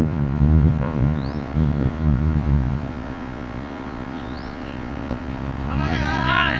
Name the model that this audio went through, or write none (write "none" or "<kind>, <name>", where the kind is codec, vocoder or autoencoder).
vocoder, Vocos